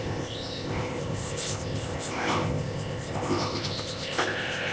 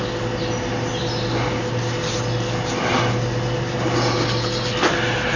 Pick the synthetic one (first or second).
first